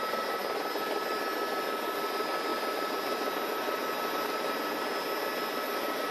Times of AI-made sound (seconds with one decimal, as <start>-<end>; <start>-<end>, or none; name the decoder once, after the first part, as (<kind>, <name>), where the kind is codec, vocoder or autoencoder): none